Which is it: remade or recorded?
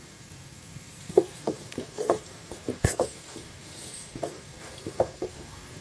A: remade